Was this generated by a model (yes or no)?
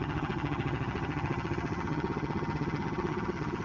yes